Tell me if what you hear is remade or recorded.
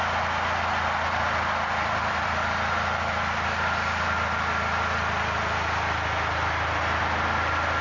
recorded